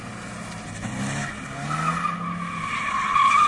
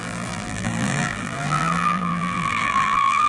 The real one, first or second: first